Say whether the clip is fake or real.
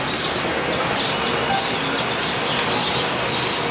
real